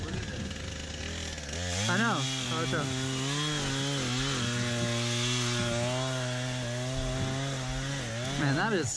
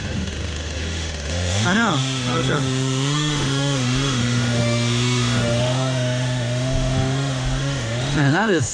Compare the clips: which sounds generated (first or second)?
second